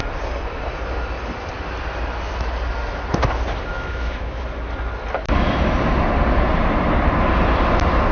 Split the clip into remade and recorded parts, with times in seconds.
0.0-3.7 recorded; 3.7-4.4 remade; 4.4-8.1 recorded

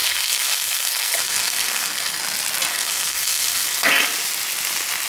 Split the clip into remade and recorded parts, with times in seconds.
0.0-2.2 remade; 2.2-2.7 recorded; 2.7-4.0 remade; 4.0-5.1 recorded

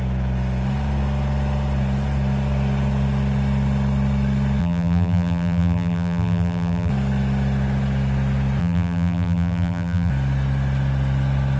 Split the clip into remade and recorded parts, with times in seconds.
0.0-4.6 recorded; 4.6-6.9 remade; 6.9-8.6 recorded; 8.6-10.1 remade; 10.1-11.6 recorded

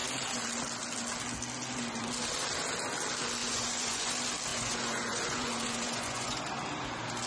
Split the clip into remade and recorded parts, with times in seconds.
0.0-3.4 recorded; 3.4-4.1 remade; 4.1-4.5 recorded; 4.5-6.4 remade; 6.4-7.3 recorded

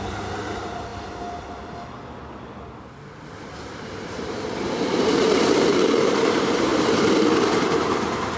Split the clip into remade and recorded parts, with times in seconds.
0.0-0.9 remade; 0.9-4.1 recorded; 4.1-6.7 remade; 6.7-7.6 recorded; 7.6-8.4 remade